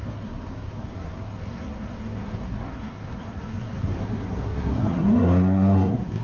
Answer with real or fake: fake